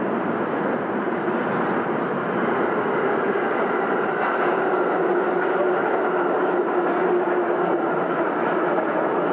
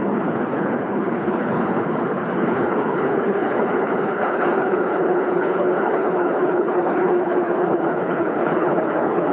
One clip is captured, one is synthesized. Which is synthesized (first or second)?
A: second